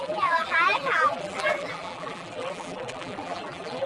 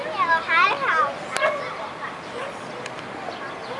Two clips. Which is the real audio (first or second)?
second